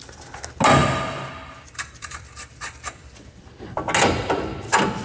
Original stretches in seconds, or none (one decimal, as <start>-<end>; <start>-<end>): 0.0-0.8; 3.8-5.0